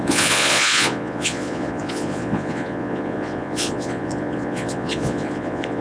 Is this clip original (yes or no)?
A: no